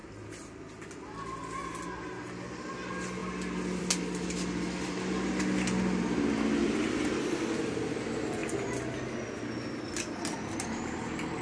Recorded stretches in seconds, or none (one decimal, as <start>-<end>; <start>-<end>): 0.0-11.4